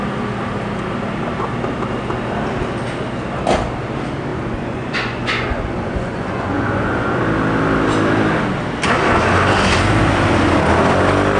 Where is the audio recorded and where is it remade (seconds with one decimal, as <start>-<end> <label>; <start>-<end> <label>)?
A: 0.0-4.3 recorded; 4.3-7.2 remade; 7.2-11.4 recorded